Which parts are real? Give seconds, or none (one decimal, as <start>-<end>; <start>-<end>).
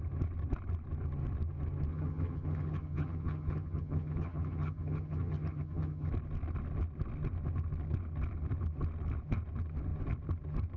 0.0-1.9; 6.1-10.8